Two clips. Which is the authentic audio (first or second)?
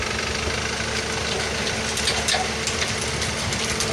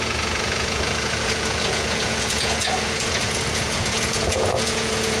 first